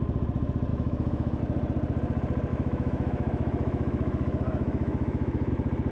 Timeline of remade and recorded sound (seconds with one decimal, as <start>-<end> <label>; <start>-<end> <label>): 0.0-0.7 recorded; 0.7-1.4 remade; 1.4-2.5 recorded; 2.5-5.5 remade; 5.5-5.9 recorded